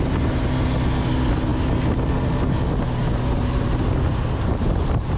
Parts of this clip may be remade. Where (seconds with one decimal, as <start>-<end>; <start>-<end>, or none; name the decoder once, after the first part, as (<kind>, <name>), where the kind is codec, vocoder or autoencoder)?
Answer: none